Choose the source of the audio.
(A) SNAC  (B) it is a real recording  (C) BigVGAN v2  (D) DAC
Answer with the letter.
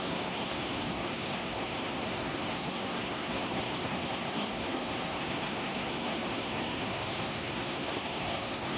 A